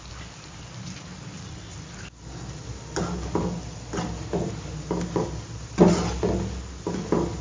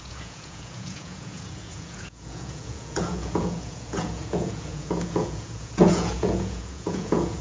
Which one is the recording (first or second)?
first